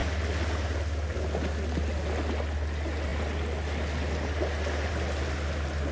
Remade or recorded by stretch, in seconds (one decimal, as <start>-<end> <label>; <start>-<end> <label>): 0.0-5.9 recorded